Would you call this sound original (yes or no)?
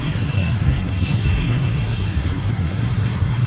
no